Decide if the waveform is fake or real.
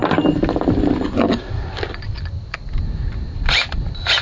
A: real